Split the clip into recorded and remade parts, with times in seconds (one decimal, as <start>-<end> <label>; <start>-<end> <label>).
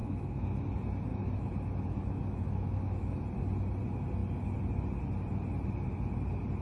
0.0-0.7 remade; 0.7-1.1 recorded; 1.1-3.2 remade; 3.2-6.6 recorded